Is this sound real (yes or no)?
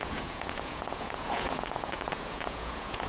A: no